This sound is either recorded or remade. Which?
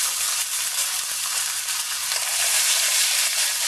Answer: remade